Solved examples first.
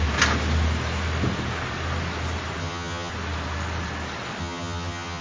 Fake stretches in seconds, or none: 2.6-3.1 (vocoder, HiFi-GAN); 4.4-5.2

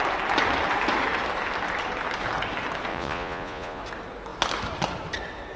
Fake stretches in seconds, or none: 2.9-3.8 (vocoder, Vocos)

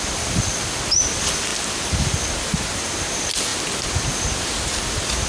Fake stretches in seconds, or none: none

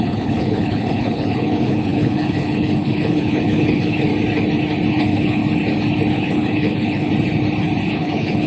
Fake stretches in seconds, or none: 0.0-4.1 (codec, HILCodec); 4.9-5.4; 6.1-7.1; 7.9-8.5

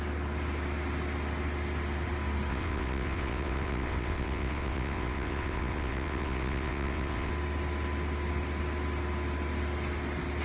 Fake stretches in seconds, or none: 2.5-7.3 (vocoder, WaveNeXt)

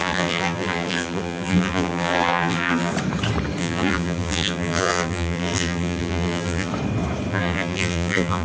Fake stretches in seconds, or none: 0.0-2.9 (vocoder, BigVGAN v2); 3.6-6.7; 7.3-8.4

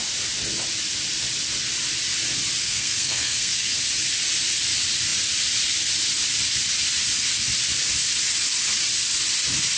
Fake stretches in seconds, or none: 2.6-3.8 (codec, SNAC)